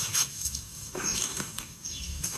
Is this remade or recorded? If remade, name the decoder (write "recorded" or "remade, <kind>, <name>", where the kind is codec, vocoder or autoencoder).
remade, codec, DAC